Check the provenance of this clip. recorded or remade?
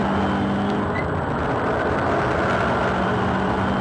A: recorded